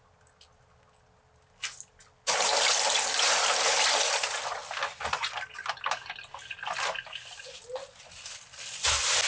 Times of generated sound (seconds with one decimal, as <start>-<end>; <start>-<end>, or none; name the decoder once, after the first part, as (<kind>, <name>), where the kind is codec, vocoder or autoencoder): 4.6-7.6 (vocoder, BigVGAN v2)